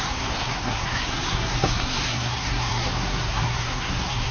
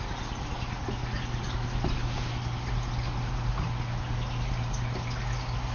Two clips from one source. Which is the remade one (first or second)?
first